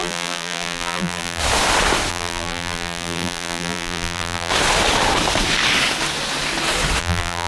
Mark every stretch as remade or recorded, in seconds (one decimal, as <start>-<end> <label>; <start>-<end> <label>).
0.0-1.4 remade; 1.4-2.1 recorded; 2.1-4.5 remade; 4.5-7.0 recorded; 7.0-7.5 remade